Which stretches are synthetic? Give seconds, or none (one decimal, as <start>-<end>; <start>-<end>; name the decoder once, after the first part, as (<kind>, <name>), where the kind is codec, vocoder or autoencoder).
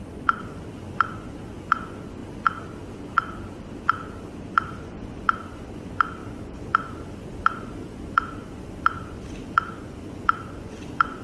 0.0-2.2 (vocoder, Vocos); 4.5-11.2